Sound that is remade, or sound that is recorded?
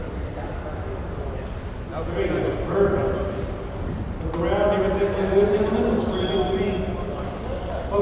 recorded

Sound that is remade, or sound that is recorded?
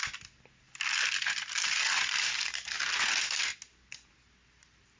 recorded